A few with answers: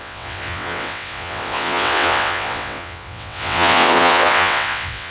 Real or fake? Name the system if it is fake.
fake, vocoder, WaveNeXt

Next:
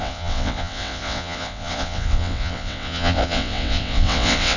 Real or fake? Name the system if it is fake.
fake, vocoder, WaveNeXt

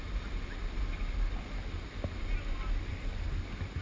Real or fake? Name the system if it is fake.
real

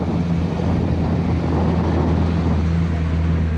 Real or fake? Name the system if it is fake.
real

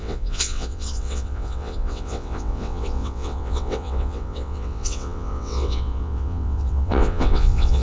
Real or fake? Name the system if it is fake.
fake, vocoder, WaveNeXt